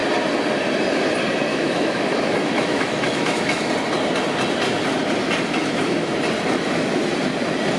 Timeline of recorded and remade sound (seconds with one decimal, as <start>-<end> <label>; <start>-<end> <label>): 0.0-1.5 recorded; 1.5-3.7 remade; 3.7-5.6 recorded; 5.6-6.2 remade; 6.2-7.8 recorded